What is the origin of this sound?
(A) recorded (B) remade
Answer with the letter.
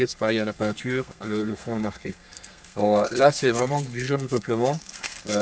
B